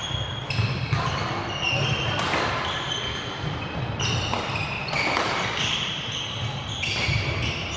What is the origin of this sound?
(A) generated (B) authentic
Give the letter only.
B